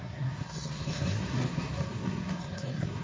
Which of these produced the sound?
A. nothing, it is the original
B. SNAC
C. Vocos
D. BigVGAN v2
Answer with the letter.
B